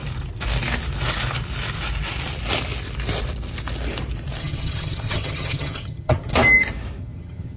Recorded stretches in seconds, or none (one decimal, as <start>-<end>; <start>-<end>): 0.0-4.4; 6.3-7.0